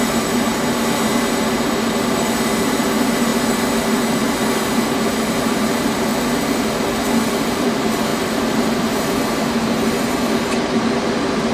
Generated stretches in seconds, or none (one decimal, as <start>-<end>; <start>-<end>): 0.0-6.1; 7.2-11.5